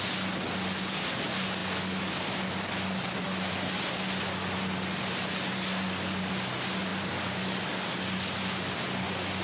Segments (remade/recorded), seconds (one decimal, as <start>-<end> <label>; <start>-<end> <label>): 0.0-6.9 recorded; 6.9-7.6 remade; 7.6-9.4 recorded